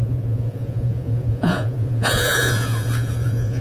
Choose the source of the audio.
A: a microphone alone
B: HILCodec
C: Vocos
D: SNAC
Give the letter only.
C